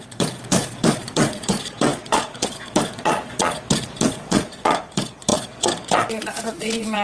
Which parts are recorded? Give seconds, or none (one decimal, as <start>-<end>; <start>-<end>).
none